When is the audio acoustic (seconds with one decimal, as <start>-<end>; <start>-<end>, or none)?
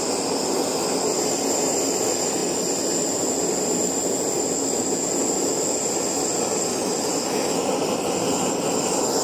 0.0-9.2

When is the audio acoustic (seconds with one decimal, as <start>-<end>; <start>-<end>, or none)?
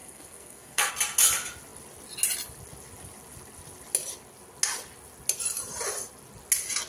0.9-6.9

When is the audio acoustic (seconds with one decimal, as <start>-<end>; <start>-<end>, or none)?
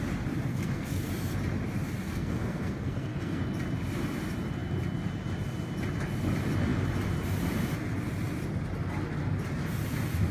0.0-0.5; 1.1-2.0; 3.4-10.3